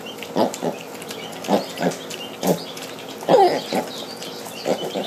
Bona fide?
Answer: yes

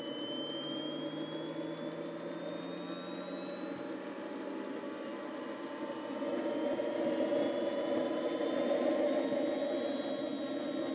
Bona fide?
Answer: yes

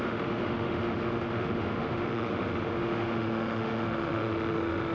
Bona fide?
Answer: no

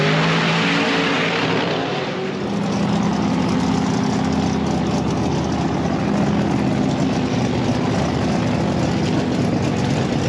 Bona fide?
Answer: yes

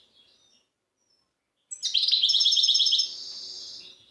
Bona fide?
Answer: yes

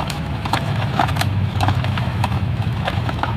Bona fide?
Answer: no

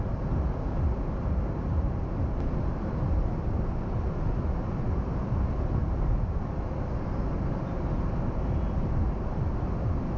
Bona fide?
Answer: yes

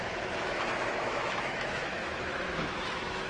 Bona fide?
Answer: no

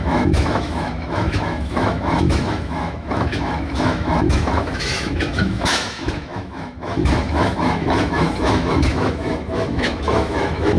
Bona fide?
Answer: no